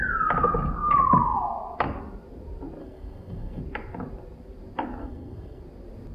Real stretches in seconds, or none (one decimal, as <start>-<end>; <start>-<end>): 0.0-2.8; 3.6-5.0; 5.6-6.1